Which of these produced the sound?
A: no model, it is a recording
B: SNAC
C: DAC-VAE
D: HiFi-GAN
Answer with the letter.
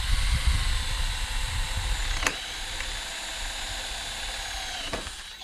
A